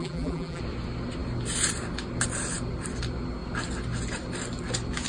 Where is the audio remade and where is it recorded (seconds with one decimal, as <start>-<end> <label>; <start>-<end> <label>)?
0.0-0.6 remade; 0.6-5.1 recorded

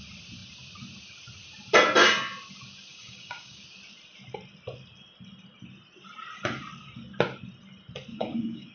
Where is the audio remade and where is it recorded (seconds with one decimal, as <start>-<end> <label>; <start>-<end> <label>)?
0.0-2.9 recorded; 2.9-3.6 remade; 3.6-8.1 recorded; 8.1-8.7 remade

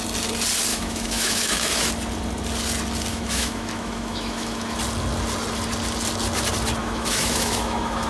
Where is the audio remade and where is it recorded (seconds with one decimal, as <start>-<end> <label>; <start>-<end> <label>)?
0.0-0.7 recorded; 0.7-1.9 remade; 1.9-3.1 recorded; 3.1-4.8 remade; 4.8-6.8 recorded; 6.8-8.1 remade

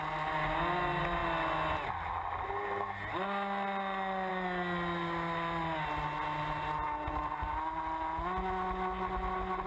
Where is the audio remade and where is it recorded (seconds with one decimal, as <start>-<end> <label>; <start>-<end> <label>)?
0.0-9.7 recorded

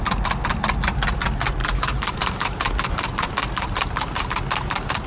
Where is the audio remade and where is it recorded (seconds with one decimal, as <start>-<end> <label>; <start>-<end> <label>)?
0.0-1.6 recorded; 1.6-4.3 remade; 4.3-5.1 recorded

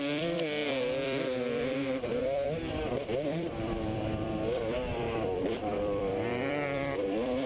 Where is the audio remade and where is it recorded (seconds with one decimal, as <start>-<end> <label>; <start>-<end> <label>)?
0.0-7.5 remade

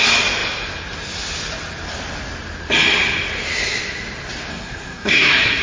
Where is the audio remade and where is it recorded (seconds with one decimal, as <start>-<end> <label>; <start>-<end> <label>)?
0.0-4.5 recorded; 4.5-5.6 remade